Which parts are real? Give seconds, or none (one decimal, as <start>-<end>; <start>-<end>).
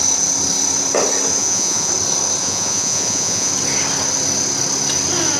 0.0-1.4; 1.9-2.4; 3.5-5.4